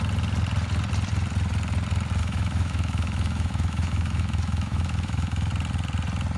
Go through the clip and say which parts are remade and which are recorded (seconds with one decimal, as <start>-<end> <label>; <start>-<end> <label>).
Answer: 0.0-2.2 recorded; 2.2-5.5 remade; 5.5-6.4 recorded